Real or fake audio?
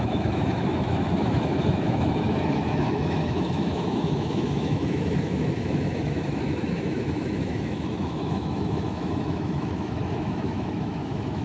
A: fake